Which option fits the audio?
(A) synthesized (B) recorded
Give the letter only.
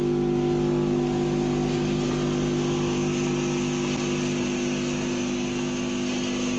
B